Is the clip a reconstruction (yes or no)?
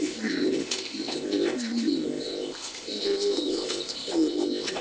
yes